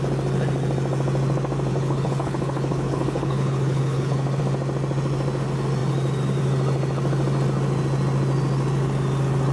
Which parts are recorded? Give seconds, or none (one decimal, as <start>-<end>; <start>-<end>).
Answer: 0.0-1.7; 4.4-9.5